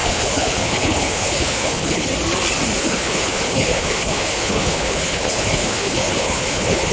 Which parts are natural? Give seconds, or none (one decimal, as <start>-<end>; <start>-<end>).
2.1-2.8